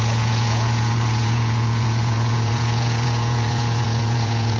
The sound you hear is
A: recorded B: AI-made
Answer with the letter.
B